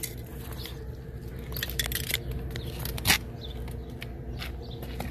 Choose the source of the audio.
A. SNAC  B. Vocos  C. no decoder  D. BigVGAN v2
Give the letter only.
C